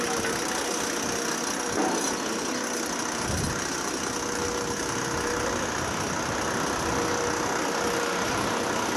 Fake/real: real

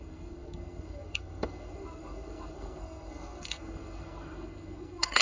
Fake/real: fake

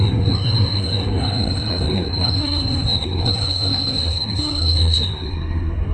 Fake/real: fake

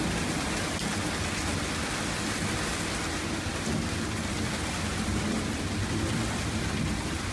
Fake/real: real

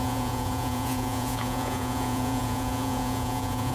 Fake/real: fake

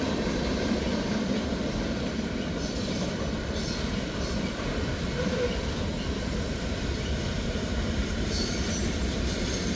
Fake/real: fake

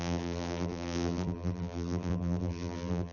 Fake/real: fake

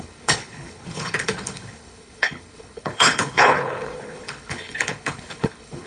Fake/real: fake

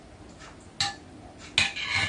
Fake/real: real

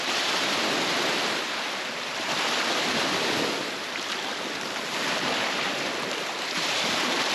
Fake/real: real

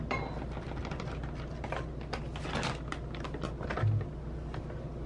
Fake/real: real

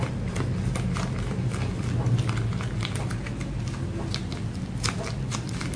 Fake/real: real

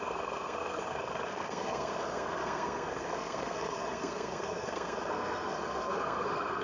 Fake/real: fake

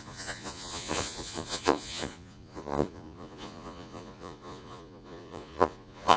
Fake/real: fake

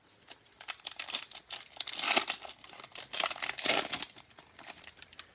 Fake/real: real